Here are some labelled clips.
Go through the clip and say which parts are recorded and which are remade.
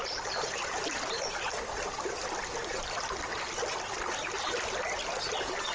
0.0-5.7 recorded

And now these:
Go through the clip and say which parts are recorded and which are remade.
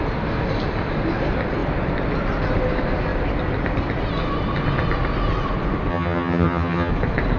0.0-5.9 recorded; 5.9-6.9 remade; 6.9-7.4 recorded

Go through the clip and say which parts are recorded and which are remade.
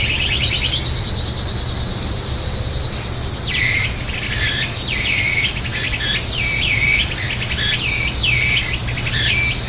0.0-9.7 recorded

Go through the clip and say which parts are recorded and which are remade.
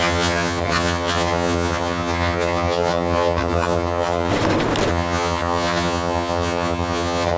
0.0-4.3 remade; 4.3-4.9 recorded; 4.9-7.4 remade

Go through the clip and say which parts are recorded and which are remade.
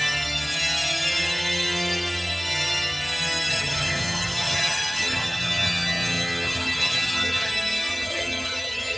0.0-3.5 recorded; 3.5-7.5 remade; 7.5-7.9 recorded; 7.9-9.0 remade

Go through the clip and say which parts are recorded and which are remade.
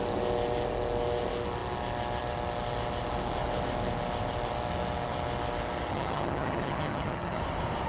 0.0-5.9 recorded; 5.9-7.4 remade; 7.4-7.9 recorded